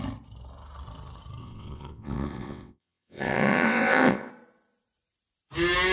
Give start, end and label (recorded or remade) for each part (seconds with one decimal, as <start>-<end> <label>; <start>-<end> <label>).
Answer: 0.0-1.4 recorded; 1.4-4.3 remade; 4.3-5.9 recorded